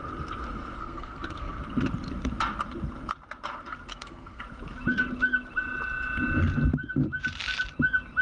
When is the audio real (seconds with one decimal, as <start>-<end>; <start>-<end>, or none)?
0.0-0.8; 1.6-3.9; 4.4-8.2